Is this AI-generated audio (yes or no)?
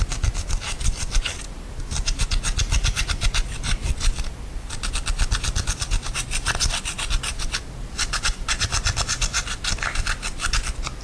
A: no